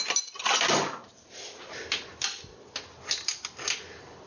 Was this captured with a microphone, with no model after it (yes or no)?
yes